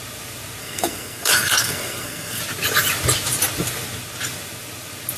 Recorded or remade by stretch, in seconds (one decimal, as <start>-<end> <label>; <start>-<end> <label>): 0.0-0.6 recorded; 0.6-2.4 remade; 2.4-5.2 recorded